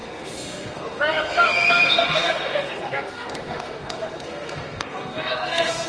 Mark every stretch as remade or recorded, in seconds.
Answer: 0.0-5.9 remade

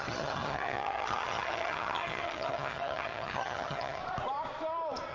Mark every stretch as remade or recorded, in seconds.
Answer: 0.0-4.0 remade; 4.0-5.1 recorded

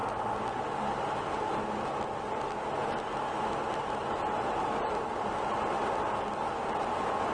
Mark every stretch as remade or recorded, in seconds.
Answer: 0.0-7.3 recorded

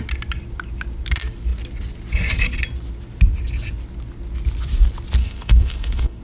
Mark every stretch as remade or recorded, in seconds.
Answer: 0.0-5.2 recorded; 5.2-6.2 remade